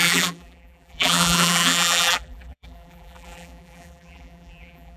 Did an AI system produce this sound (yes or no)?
yes